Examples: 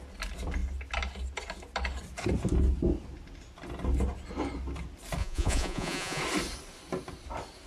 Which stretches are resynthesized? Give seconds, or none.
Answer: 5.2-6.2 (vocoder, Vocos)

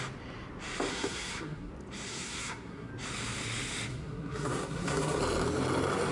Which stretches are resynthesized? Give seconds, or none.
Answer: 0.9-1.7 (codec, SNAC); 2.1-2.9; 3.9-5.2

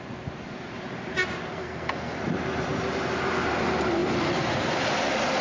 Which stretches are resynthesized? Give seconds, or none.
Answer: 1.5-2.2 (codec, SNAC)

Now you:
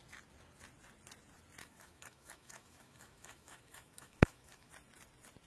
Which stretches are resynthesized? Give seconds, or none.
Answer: 1.6-4.7 (autoencoder, DAC-VAE)